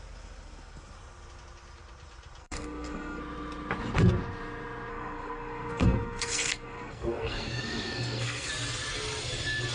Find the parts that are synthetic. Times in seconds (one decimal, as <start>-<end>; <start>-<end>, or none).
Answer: 2.4-3.2; 4.9-8.5